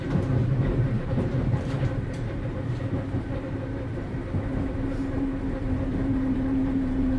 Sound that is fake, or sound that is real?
fake